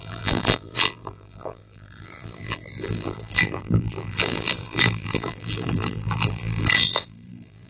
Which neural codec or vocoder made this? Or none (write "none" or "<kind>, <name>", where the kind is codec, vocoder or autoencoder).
vocoder, BigVGAN v2